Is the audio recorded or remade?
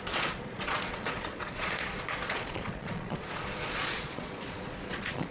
remade